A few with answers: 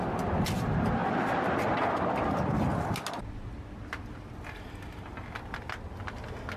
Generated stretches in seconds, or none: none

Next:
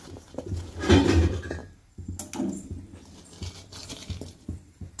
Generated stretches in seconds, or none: 0.0-1.6; 3.9-5.0